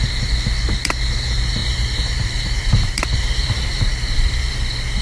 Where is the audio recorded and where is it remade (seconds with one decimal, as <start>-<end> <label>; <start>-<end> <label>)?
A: 0.0-1.6 recorded; 1.6-4.6 remade; 4.6-5.0 recorded